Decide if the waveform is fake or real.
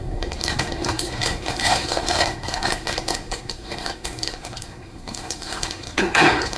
fake